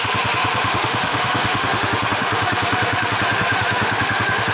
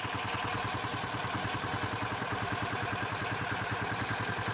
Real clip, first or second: second